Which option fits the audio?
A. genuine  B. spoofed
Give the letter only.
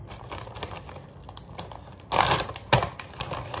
A